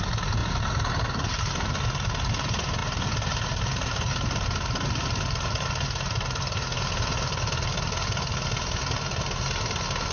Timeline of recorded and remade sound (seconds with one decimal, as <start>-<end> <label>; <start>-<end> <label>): 0.0-10.1 recorded